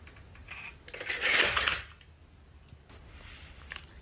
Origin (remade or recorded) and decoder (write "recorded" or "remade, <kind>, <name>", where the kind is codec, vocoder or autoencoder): recorded